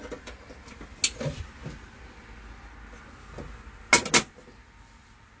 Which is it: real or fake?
real